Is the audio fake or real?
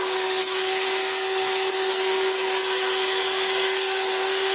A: fake